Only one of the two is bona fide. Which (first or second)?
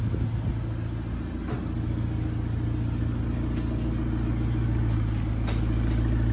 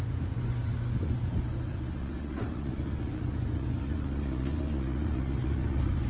first